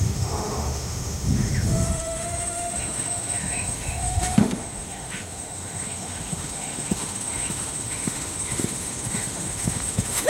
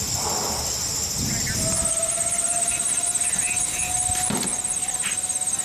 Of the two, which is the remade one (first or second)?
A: first